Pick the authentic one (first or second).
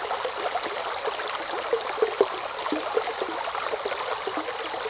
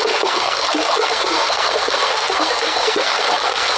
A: first